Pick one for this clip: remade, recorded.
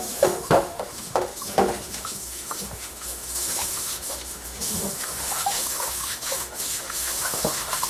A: remade